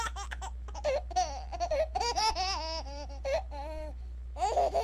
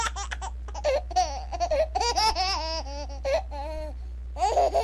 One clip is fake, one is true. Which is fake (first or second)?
first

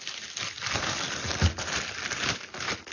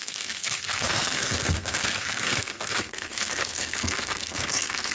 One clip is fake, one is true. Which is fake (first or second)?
second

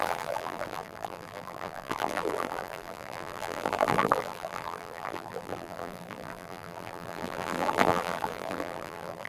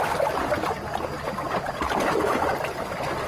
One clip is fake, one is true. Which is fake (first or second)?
first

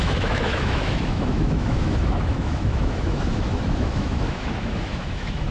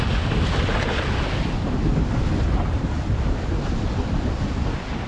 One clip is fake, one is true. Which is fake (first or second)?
first